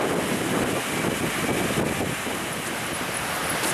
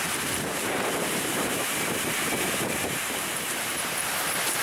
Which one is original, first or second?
first